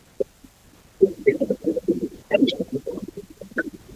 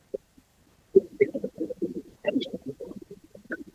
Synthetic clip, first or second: second